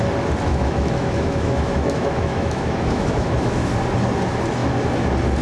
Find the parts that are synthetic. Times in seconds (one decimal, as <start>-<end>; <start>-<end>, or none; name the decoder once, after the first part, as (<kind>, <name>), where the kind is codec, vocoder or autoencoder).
0.5-3.7 (autoencoder, DAC-VAE)